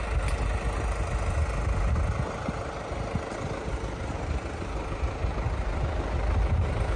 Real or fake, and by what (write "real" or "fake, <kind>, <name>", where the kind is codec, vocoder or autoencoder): real